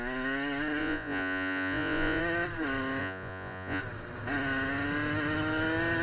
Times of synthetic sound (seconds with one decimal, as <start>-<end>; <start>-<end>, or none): 0.8-2.2; 3.0-3.8

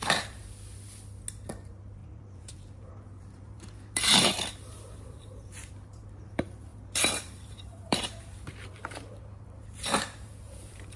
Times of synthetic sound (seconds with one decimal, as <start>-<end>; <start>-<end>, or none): 0.0-0.4; 1.5-11.0

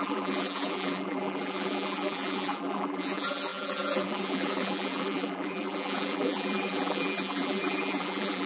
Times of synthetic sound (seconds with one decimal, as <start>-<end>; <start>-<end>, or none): 0.0-8.5

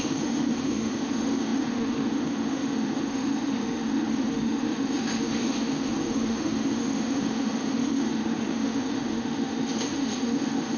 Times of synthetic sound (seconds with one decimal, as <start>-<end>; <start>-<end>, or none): 0.0-10.8

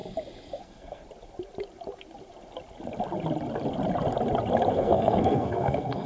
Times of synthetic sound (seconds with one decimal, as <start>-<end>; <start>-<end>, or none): 0.6-1.0; 4.7-6.1